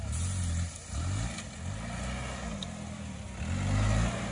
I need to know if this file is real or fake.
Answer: real